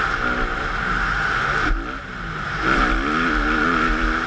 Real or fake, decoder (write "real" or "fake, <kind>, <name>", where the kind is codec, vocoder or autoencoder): real